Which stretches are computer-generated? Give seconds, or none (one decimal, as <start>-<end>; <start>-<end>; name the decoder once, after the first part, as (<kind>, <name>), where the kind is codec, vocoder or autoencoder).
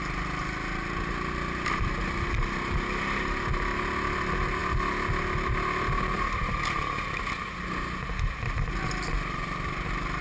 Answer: none